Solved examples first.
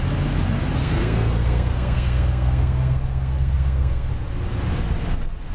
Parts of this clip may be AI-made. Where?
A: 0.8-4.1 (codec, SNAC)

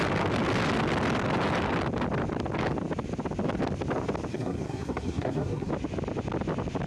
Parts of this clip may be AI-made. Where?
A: 4.3-5.7 (codec, SNAC)

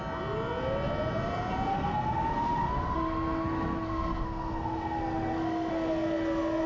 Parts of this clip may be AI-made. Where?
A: 1.7-5.7 (codec, SNAC)

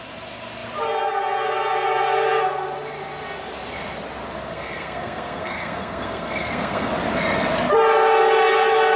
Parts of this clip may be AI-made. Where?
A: 4.5-6.9 (codec, SNAC)

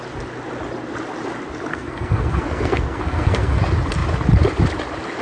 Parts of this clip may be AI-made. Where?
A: 1.7-3.6 (codec, SNAC)

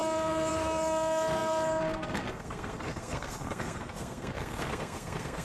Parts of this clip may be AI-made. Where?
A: 0.0-5.4 (codec, SNAC)

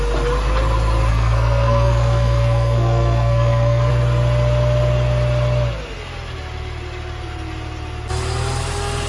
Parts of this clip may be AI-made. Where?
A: 1.1-3.9 (codec, SNAC)

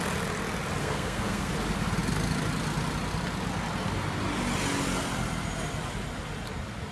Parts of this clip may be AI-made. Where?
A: 0.8-1.5 (codec, SNAC)